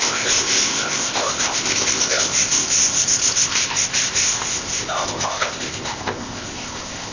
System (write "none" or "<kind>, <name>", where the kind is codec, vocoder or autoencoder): codec, ZipCodec